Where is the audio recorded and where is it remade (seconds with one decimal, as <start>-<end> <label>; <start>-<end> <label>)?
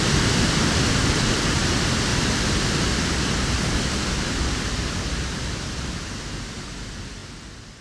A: 0.0-2.1 remade; 2.1-6.5 recorded; 6.5-7.2 remade; 7.2-7.8 recorded